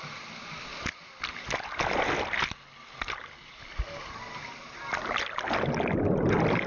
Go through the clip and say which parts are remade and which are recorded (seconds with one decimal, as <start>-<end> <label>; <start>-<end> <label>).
0.0-6.7 recorded